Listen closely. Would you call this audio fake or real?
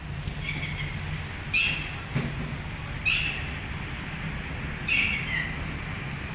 real